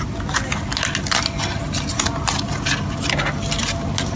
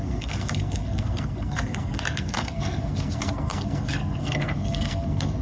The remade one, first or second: second